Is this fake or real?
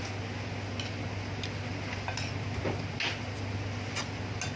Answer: real